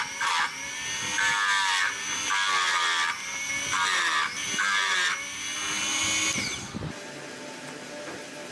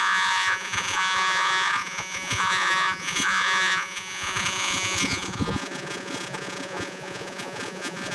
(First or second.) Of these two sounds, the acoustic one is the first